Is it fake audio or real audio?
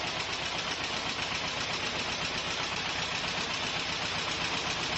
real